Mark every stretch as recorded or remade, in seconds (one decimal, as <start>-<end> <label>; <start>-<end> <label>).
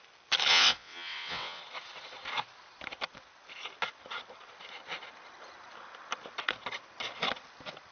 0.0-0.5 recorded; 0.5-1.6 remade; 1.6-7.9 recorded